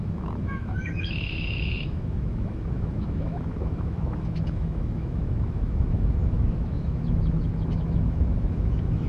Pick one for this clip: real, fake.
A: fake